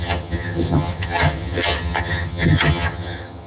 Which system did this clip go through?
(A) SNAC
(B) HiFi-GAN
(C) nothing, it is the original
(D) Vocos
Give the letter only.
B